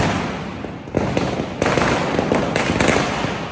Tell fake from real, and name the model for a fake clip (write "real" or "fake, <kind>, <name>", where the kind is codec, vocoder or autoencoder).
real